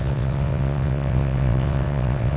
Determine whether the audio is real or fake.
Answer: fake